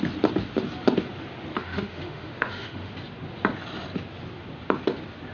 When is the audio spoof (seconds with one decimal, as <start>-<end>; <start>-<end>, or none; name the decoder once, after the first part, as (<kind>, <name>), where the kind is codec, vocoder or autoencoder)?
1.5-2.9 (autoencoder, DAC-VAE)